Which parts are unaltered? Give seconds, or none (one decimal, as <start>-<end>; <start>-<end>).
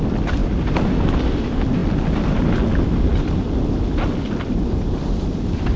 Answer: 0.0-5.8